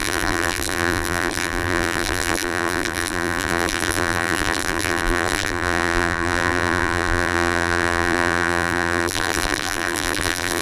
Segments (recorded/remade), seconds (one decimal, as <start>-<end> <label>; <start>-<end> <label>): 0.0-10.6 remade